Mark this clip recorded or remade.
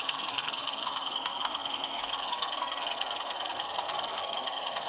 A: remade